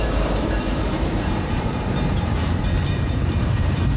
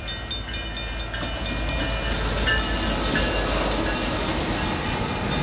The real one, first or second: second